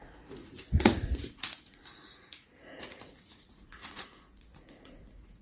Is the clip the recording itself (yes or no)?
no